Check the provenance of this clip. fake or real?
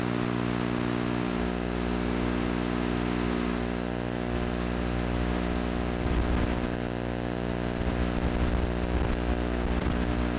real